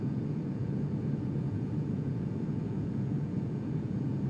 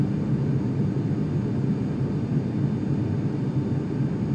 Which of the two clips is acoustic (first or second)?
second